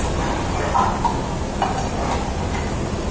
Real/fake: real